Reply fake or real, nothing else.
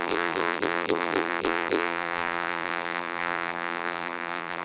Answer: fake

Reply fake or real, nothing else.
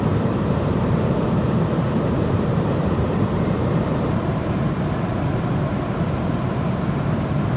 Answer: fake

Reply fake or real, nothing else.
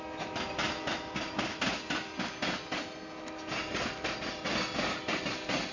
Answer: real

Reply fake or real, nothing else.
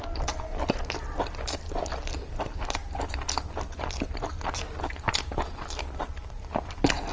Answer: real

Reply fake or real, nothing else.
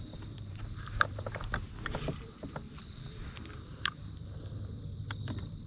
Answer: fake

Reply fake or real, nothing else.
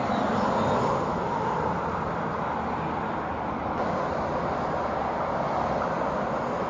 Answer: real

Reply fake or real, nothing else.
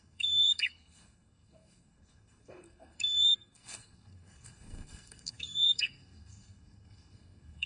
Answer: fake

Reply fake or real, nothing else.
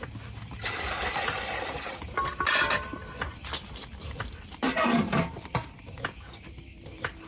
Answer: real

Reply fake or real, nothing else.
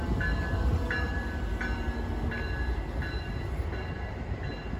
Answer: real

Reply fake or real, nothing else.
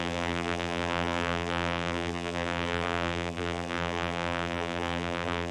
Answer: fake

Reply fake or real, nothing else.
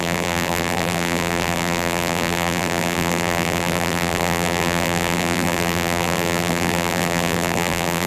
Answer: fake